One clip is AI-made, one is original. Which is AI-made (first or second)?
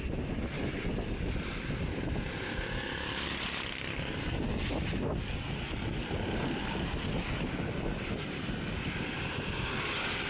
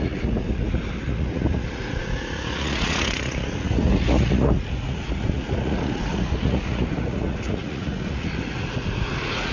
second